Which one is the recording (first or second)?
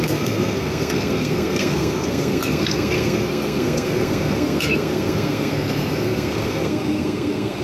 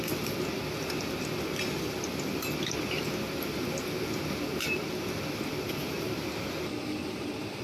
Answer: second